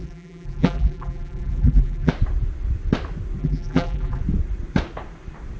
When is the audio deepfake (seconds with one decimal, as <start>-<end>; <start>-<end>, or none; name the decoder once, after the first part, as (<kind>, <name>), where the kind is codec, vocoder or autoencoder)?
0.0-2.1 (vocoder, BigVGAN v2); 3.4-4.2